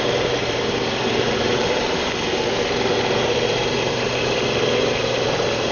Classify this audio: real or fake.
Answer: fake